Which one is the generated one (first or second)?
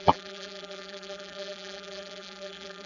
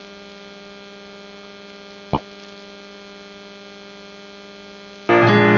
first